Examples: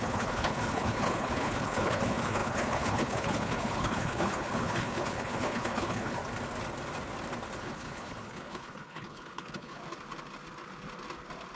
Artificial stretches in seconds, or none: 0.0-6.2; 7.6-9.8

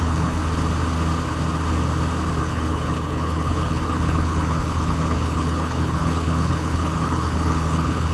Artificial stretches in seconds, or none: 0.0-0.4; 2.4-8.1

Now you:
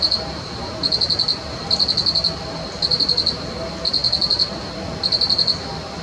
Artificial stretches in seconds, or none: none

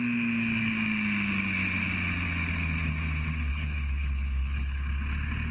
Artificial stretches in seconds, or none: 3.5-4.9